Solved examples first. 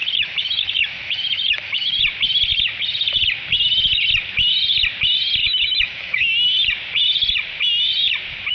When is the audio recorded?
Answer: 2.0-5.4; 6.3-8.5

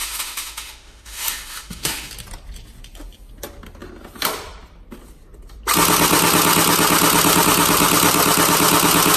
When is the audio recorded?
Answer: 2.1-9.2

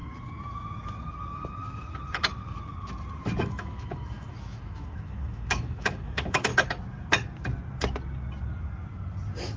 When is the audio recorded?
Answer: 0.0-3.4; 6.5-9.6

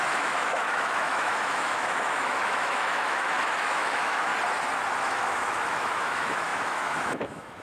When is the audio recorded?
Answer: 4.3-5.0

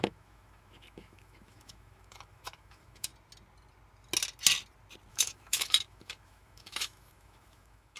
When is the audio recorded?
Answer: 3.1-5.1

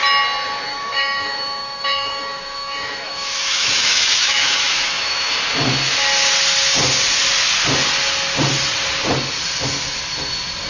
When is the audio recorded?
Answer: 0.0-0.7; 5.3-10.7